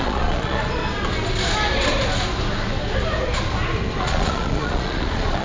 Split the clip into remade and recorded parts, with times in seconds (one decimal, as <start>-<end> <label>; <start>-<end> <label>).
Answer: 0.0-0.8 remade; 0.8-4.0 recorded; 4.0-5.4 remade